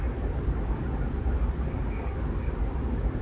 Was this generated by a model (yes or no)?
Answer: no